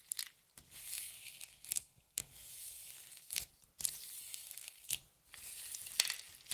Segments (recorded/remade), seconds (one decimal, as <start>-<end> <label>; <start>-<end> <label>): 0.0-0.8 recorded; 0.8-3.5 remade; 3.5-4.2 recorded; 4.2-5.0 remade; 5.0-6.5 recorded